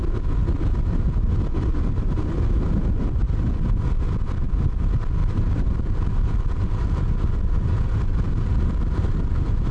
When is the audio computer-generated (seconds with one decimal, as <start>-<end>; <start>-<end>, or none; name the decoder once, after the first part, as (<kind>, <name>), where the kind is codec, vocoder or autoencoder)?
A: 5.2-9.7 (vocoder, BigVGAN v2)